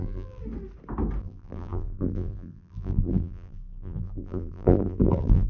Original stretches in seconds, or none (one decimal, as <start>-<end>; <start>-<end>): 0.4-1.2